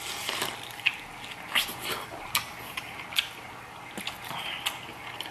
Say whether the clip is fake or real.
real